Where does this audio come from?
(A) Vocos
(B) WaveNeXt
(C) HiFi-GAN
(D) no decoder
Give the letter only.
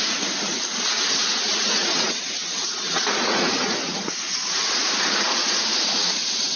A